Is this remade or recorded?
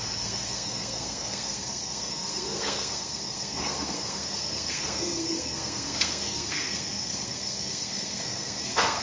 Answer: remade